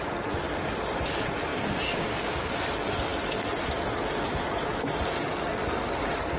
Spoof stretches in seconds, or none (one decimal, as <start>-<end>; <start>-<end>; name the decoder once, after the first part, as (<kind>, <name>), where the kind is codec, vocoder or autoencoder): 1.5-2.6 (codec, DAC)

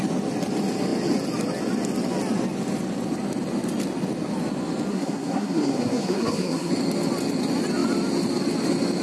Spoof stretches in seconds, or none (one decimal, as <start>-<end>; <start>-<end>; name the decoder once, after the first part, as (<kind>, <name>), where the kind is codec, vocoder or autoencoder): 4.9-6.7 (codec, SNAC)